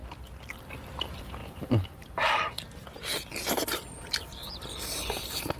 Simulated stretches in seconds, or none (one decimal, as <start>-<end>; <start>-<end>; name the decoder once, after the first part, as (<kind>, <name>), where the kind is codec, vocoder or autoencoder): 0.6-5.6 (vocoder, BigVGAN v2)